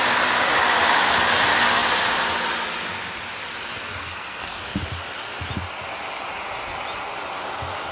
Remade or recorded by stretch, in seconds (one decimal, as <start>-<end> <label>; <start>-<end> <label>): 0.0-4.0 recorded; 4.0-4.6 remade; 4.6-7.9 recorded